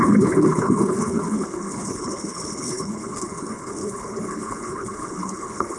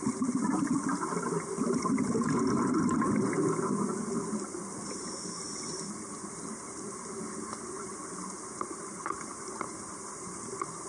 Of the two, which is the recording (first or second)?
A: second